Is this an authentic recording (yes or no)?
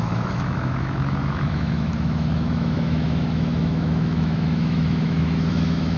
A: no